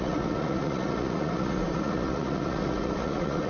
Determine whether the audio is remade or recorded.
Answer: remade